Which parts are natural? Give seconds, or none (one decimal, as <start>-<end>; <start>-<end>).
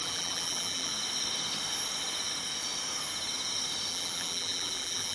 0.9-3.9